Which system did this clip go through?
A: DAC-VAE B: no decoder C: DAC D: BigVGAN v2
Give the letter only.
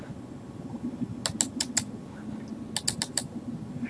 B